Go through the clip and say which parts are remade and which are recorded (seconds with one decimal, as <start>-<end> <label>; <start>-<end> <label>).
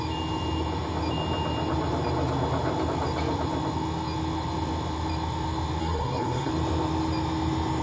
0.0-5.8 recorded; 5.8-6.5 remade; 6.5-7.8 recorded